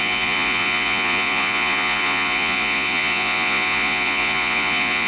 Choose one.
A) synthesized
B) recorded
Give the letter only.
A